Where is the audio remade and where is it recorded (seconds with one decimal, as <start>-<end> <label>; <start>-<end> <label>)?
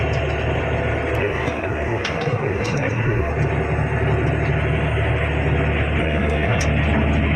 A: 0.0-1.2 recorded; 1.2-3.3 remade; 3.3-6.0 recorded; 6.0-6.6 remade; 6.6-7.4 recorded